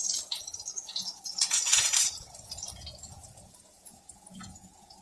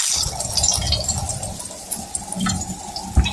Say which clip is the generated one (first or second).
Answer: first